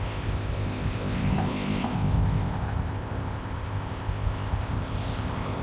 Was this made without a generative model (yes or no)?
no